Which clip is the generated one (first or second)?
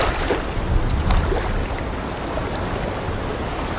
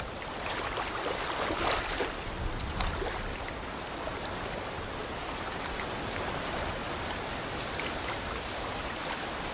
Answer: second